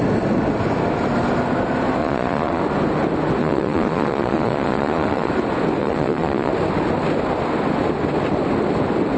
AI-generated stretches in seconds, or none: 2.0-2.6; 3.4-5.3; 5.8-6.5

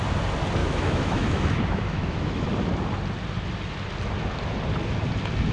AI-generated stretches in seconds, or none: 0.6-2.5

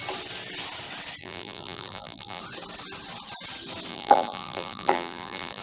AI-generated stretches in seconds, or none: 1.2-2.4; 3.9-5.6

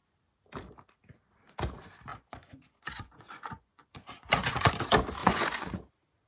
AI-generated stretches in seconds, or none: 2.1-4.7; 5.2-5.8

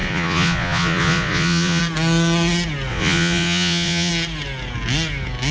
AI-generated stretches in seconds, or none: 0.0-1.8; 2.9-4.1

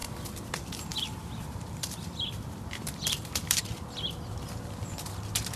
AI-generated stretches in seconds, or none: 0.0-0.5; 0.9-3.6

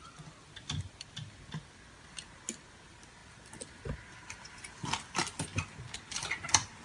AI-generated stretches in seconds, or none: none